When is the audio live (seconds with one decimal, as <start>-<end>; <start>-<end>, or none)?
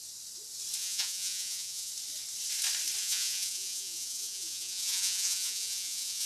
0.0-0.8; 1.9-3.0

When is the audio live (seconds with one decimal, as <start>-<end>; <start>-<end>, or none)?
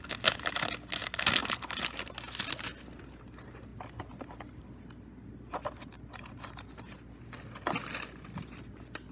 0.0-9.1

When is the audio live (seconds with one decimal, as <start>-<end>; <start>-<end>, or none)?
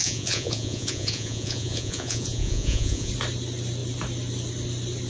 3.1-5.1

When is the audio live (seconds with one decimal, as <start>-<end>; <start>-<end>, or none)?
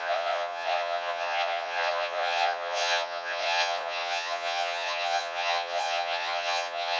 none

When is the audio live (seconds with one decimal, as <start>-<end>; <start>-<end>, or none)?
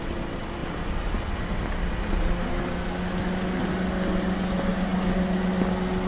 0.0-6.1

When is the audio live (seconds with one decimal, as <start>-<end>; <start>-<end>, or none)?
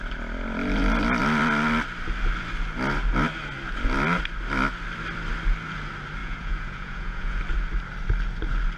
0.0-6.2; 7.4-8.8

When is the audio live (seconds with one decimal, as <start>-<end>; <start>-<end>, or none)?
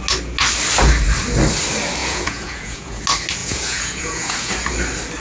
0.0-2.0; 3.0-3.4; 4.5-5.2